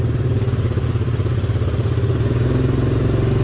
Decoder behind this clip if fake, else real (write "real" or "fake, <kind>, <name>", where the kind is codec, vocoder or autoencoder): real